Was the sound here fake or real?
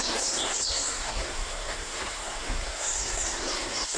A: fake